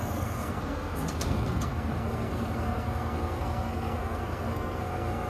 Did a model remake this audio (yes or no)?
yes